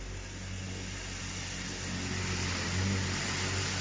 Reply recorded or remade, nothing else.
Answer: recorded